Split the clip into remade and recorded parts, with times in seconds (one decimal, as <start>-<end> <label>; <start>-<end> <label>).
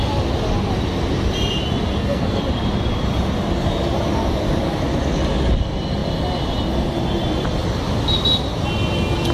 0.0-1.9 recorded; 1.9-2.4 remade; 2.4-9.3 recorded